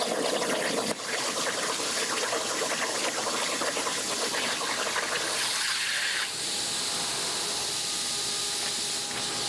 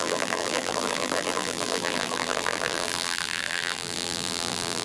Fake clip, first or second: second